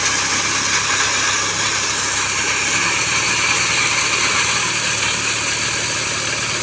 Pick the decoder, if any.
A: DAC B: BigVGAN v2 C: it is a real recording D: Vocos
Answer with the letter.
C